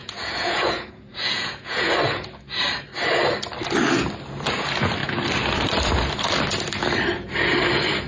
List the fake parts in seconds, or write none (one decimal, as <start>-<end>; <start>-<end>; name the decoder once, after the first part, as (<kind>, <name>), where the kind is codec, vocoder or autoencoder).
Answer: 0.0-1.9 (vocoder, Vocos)